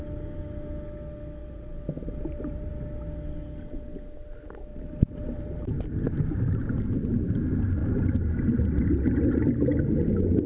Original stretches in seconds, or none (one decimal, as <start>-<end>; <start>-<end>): 0.0-1.4; 2.7-4.7; 6.7-7.8; 8.8-10.5